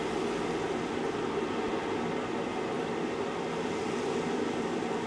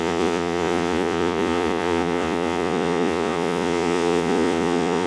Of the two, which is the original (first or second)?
first